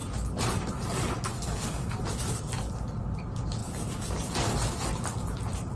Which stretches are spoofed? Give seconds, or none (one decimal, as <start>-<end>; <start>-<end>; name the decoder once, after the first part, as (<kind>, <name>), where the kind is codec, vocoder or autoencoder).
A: 1.3-2.0 (codec, SNAC)